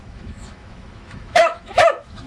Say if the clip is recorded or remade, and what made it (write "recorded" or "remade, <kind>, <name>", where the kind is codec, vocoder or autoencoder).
remade, autoencoder, DAC-VAE